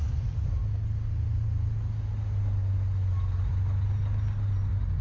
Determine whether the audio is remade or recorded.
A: recorded